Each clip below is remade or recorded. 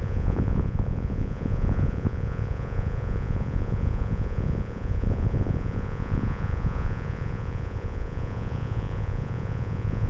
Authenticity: remade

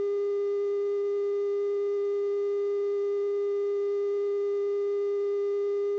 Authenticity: recorded